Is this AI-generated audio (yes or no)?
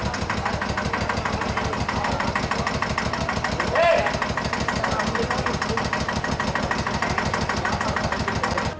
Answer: no